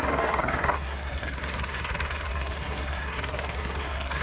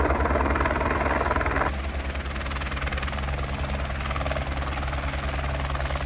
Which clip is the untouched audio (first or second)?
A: second